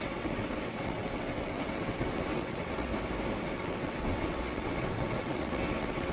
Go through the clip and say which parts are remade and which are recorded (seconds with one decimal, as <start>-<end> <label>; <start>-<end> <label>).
0.0-2.9 remade; 2.9-3.4 recorded; 3.4-6.1 remade